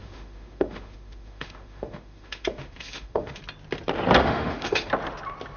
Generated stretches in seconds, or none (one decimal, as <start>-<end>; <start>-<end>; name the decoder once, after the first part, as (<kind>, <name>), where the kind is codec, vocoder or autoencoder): 0.0-3.4 (autoencoder, DAC-VAE); 4.2-4.9